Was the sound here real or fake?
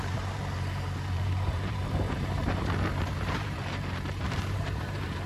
fake